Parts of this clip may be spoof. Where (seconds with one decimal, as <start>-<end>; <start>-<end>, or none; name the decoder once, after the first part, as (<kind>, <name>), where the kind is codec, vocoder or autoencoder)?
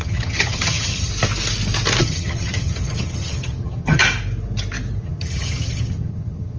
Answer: 0.0-1.1 (vocoder, HiFi-GAN); 2.0-4.0; 5.0-6.6